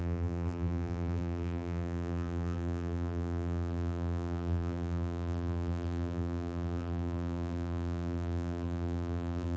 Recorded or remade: remade